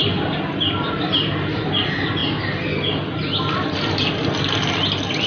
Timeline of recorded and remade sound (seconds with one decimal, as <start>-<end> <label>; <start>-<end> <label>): 0.0-5.3 recorded